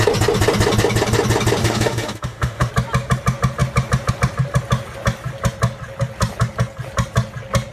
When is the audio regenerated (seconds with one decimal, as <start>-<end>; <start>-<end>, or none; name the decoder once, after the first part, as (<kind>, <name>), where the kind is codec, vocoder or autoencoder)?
1.6-2.7 (autoencoder, DAC-VAE)